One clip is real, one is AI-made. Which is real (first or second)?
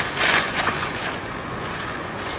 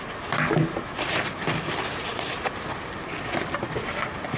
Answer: second